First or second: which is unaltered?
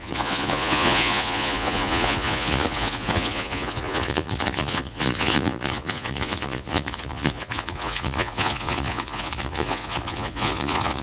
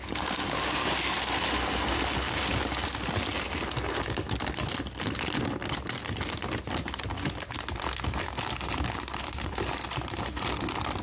second